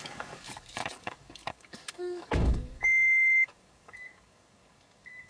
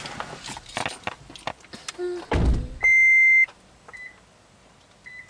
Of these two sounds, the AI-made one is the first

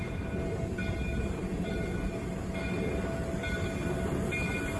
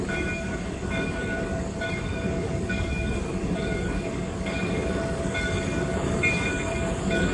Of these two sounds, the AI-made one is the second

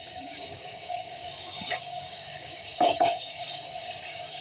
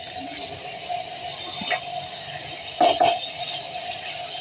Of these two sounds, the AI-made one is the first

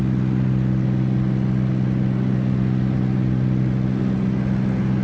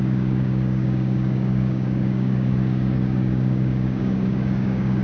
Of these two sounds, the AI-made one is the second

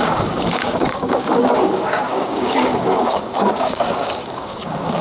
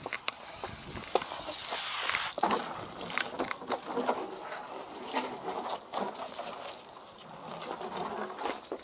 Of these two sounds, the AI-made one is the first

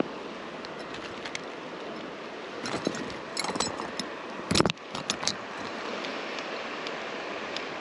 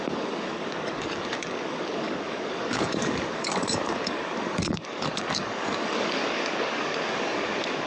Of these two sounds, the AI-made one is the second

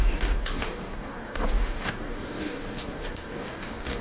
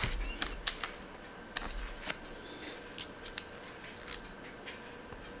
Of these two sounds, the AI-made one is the first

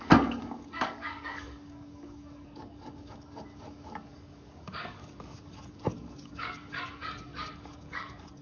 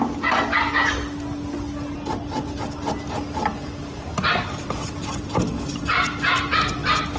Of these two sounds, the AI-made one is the first